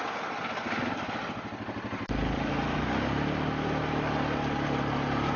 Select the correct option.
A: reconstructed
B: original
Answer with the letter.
B